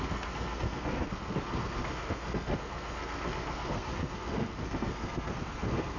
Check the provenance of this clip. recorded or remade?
remade